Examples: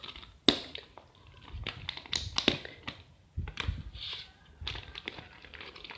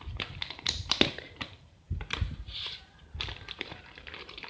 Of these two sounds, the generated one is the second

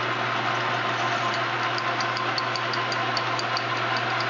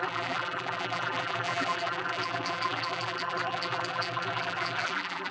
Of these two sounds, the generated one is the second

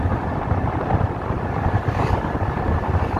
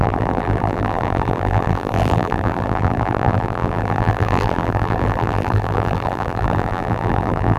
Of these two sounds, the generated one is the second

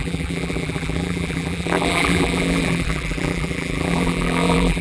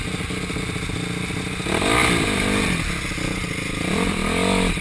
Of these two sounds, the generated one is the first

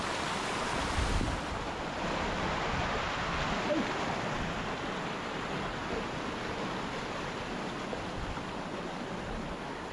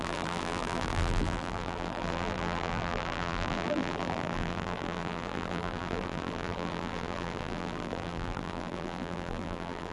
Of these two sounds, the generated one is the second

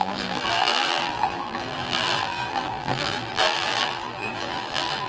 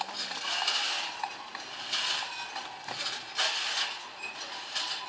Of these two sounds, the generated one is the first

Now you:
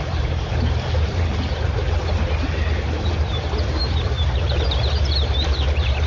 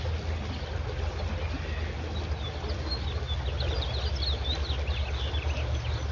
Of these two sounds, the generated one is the first